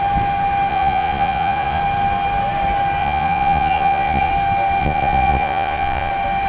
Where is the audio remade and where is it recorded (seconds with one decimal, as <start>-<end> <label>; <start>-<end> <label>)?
0.0-0.7 recorded; 0.7-1.8 remade; 1.8-3.0 recorded; 3.0-4.3 remade; 4.3-4.8 recorded; 4.8-6.1 remade; 6.1-6.5 recorded